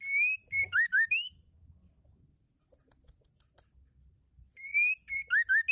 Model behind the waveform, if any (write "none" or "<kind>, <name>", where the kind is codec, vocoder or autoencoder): none